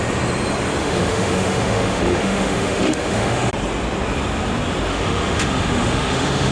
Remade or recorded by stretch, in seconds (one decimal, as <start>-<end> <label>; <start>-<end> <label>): 0.0-0.8 recorded; 0.8-3.5 remade; 3.5-4.9 recorded; 4.9-6.5 remade